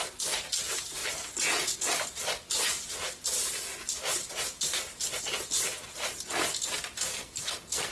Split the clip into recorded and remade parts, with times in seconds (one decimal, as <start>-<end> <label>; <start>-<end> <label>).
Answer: 0.0-7.1 recorded; 7.1-7.9 remade